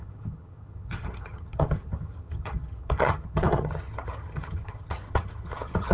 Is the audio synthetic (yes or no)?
yes